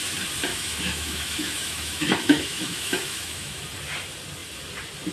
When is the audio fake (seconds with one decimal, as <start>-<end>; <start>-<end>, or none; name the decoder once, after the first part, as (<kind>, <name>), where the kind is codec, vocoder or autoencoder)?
0.5-3.6 (autoencoder, DAC-VAE)